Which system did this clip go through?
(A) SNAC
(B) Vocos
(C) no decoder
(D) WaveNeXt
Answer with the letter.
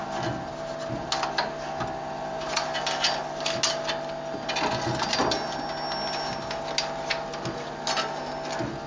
C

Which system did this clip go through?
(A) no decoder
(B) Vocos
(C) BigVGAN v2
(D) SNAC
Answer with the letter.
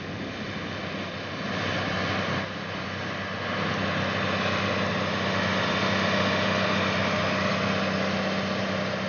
A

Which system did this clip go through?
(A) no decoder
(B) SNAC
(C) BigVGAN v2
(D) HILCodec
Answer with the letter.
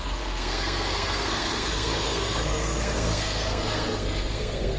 B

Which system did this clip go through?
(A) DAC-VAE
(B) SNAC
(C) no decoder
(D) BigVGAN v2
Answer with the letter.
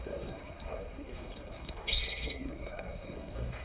B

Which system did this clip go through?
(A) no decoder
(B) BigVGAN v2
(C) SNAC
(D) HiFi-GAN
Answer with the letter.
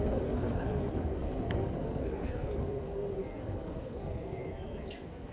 C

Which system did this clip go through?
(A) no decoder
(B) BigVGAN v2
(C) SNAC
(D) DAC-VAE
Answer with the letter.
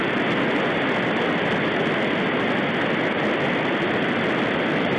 A